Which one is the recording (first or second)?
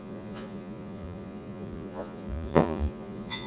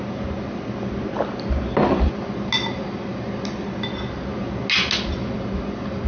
second